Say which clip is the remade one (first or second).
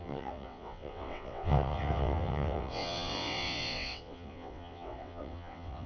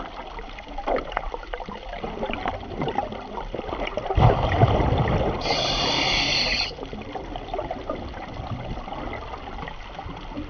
first